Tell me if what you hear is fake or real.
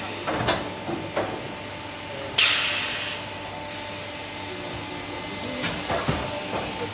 real